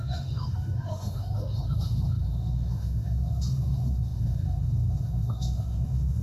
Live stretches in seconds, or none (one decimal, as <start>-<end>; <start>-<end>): none